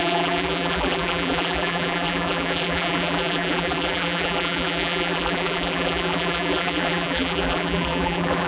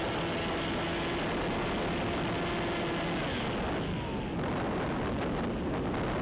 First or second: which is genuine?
second